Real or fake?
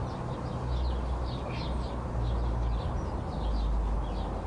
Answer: real